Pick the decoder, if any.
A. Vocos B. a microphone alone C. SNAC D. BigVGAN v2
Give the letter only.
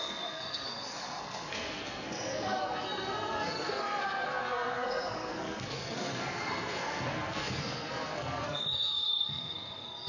C